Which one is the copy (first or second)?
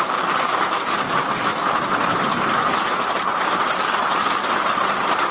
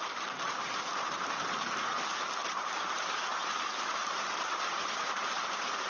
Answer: second